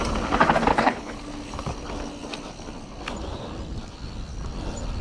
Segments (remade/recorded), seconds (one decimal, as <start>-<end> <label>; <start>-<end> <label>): 0.0-0.7 recorded; 0.7-1.2 remade; 1.2-5.0 recorded